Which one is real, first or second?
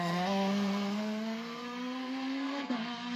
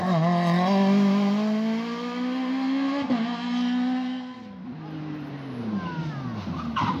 second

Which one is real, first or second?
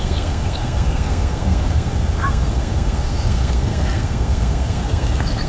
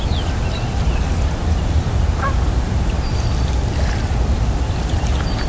second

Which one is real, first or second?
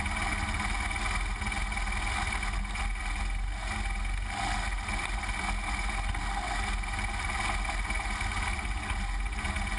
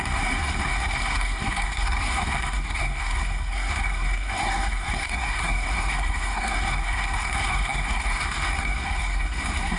first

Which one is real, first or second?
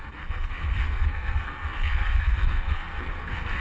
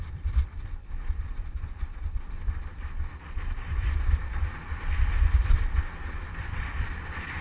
second